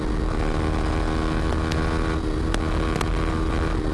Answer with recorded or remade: recorded